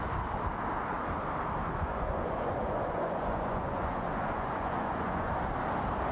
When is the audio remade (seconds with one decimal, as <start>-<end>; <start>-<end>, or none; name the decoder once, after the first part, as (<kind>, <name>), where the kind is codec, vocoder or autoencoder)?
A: 1.6-5.3 (vocoder, Vocos)